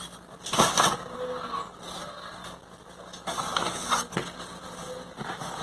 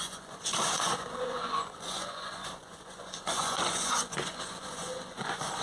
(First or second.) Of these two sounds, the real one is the first